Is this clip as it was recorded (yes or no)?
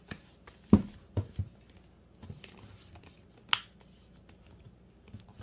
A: yes